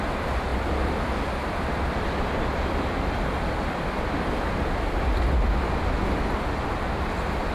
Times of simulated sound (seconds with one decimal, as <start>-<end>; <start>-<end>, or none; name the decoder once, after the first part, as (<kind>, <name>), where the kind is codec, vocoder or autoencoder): 0.5-5.0 (vocoder, BigVGAN v2)